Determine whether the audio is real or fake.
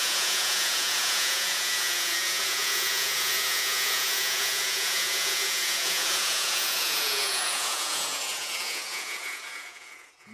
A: fake